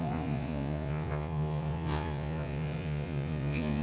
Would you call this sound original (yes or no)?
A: no